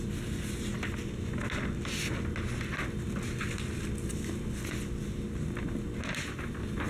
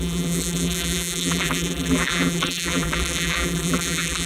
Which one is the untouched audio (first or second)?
first